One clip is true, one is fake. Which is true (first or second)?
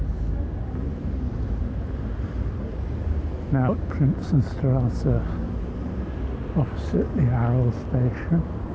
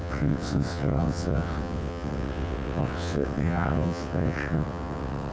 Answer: first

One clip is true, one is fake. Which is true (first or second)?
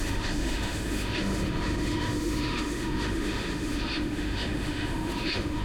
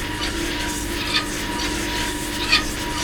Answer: second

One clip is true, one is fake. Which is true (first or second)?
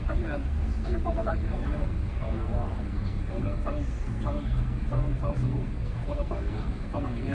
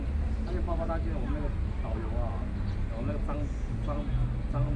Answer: second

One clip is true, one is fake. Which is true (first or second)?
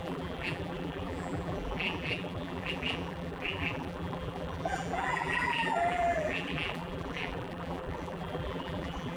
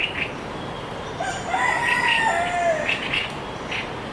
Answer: second